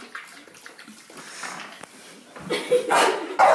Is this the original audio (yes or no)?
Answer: yes